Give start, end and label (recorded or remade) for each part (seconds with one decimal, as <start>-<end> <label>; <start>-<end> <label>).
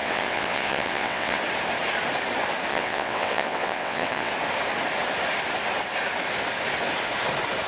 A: 0.0-1.4 remade; 1.4-2.7 recorded; 2.7-4.3 remade; 4.3-7.7 recorded